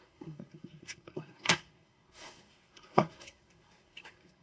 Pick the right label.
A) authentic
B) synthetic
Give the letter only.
B